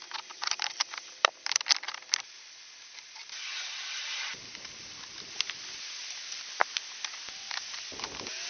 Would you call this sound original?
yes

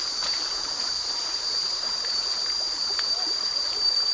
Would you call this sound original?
no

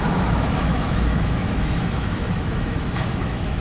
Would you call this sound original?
no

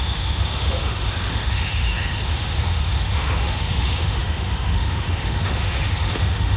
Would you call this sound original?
no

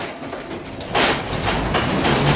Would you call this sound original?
yes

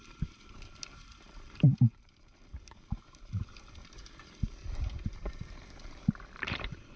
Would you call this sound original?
no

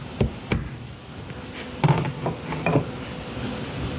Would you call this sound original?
yes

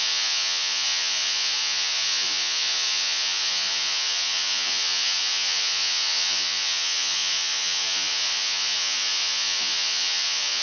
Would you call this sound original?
no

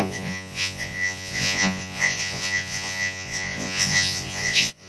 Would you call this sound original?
no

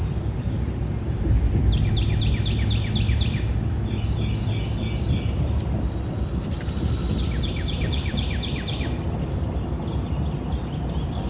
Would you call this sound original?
yes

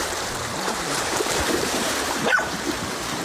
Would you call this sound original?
no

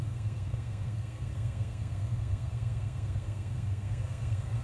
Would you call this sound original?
no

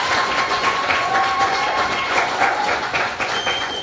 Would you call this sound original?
no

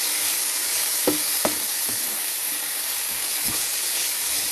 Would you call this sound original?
no